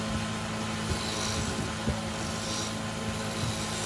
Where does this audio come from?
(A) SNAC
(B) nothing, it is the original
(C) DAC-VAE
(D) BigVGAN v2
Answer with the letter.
B